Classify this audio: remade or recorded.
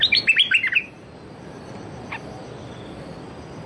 recorded